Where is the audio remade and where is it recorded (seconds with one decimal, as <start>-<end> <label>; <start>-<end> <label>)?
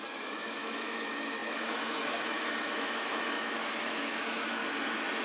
0.0-4.6 remade; 4.6-5.2 recorded